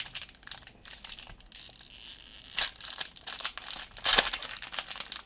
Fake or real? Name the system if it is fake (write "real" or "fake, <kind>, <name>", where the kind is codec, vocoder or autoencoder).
real